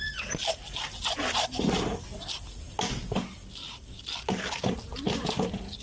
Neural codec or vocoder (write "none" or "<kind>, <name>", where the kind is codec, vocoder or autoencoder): none